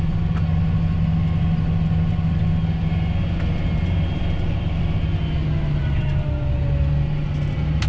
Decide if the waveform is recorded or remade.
recorded